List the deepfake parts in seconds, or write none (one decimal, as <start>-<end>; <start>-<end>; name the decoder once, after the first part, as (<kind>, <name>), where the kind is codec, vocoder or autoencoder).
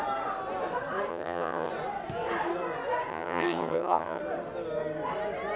1.1-1.7 (vocoder, HiFi-GAN); 3.1-4.2